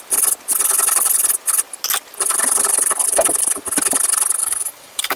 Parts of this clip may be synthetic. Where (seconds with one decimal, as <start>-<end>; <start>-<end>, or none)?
4.4-5.2